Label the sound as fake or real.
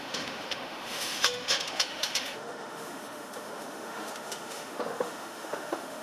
fake